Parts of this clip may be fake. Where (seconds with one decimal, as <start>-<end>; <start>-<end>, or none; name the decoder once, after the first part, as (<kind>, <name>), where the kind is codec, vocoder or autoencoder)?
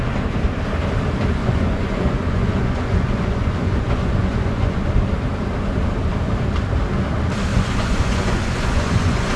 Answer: 1.4-4.8 (vocoder, Vocos); 7.5-9.4